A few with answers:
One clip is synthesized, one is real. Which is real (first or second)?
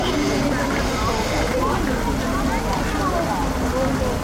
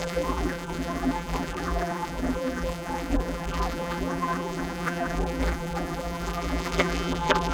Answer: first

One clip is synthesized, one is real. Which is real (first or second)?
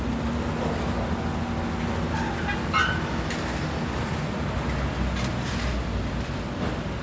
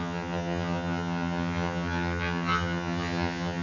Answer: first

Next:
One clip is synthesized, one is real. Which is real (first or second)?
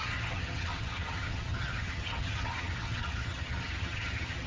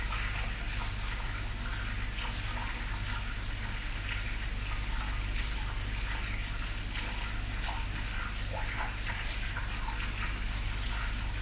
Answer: second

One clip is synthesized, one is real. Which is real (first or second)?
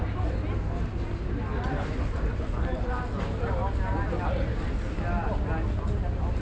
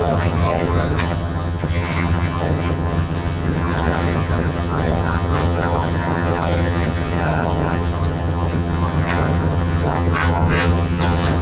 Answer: first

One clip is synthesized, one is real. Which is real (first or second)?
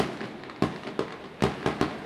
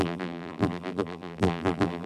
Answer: first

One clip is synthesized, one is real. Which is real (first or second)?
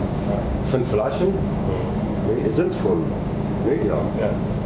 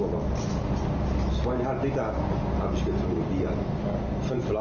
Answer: second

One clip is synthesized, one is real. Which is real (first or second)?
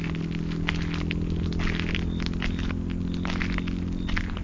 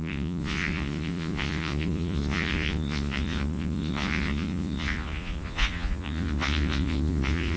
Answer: first